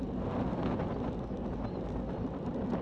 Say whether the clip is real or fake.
real